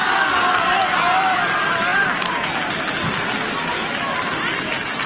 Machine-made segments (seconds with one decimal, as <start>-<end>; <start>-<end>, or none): none